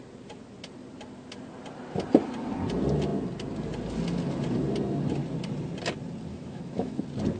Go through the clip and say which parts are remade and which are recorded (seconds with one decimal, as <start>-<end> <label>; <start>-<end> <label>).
0.0-6.3 recorded; 6.3-7.0 remade; 7.0-7.4 recorded